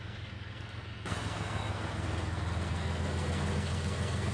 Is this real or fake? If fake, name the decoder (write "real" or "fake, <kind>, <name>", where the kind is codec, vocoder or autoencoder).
fake, codec, SNAC